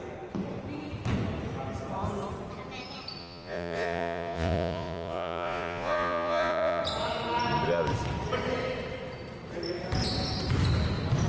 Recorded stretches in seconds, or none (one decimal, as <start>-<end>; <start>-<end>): 0.0-3.2; 6.8-11.3